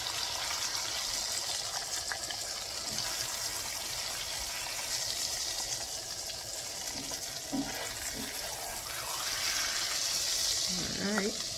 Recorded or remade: recorded